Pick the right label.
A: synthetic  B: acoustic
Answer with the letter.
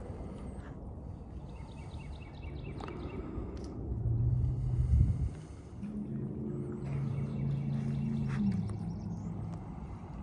B